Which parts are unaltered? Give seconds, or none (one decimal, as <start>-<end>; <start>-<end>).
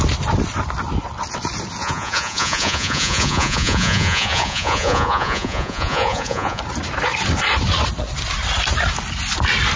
0.0-1.8; 6.6-9.8